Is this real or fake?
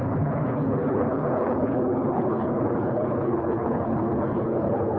fake